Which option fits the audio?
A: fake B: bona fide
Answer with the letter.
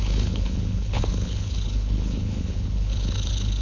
A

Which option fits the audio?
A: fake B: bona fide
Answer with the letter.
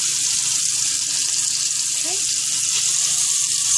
B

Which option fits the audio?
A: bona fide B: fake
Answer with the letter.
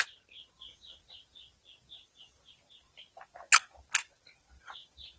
A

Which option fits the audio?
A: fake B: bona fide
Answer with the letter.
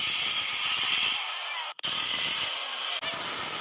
B